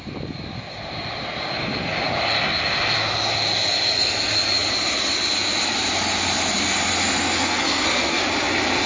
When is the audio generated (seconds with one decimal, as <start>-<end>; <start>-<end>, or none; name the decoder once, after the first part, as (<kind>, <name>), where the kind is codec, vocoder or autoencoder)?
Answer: 7.5-8.2 (codec, SNAC)